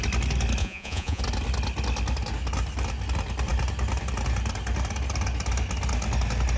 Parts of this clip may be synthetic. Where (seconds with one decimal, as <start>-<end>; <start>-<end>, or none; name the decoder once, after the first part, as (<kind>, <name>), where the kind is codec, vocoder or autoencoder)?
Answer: 0.6-1.2 (vocoder, Vocos)